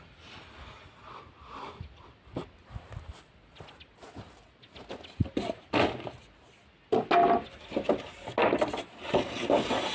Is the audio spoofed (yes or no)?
no